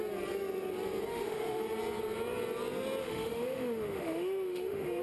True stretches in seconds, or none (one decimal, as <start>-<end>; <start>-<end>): 0.0-1.1; 1.6-3.0